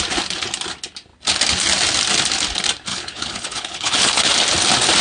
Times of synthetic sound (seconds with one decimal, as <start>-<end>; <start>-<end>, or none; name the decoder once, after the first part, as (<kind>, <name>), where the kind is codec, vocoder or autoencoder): 2.9-4.3 (codec, HILCodec)